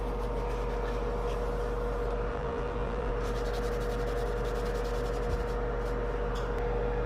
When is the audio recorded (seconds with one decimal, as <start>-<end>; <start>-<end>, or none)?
0.0-2.3; 3.1-7.1